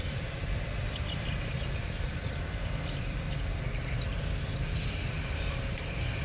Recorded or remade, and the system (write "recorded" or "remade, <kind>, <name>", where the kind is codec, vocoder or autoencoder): remade, vocoder, BigVGAN v2